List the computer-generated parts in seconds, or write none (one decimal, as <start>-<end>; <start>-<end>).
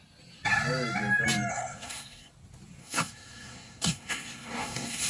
1.5-2.3; 2.8-5.1